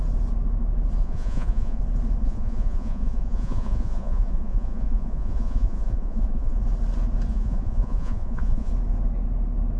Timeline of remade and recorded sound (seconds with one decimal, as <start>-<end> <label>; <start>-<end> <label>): 0.0-1.0 recorded; 1.0-1.8 remade; 1.8-2.2 recorded; 2.2-6.6 remade; 6.6-7.3 recorded; 7.3-8.7 remade; 8.7-9.8 recorded